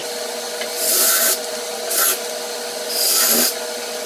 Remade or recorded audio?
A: recorded